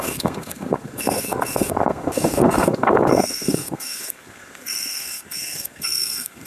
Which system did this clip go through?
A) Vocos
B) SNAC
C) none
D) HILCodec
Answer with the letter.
B